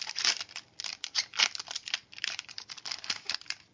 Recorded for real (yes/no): no